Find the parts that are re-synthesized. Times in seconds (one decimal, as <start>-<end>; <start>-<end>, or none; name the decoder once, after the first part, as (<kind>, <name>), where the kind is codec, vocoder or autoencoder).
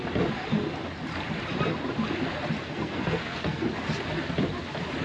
2.6-3.7 (codec, SNAC)